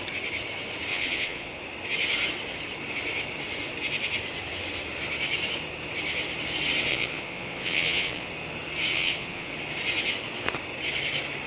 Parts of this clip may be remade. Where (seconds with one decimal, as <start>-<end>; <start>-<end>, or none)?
0.9-1.6; 6.9-8.3; 8.9-9.5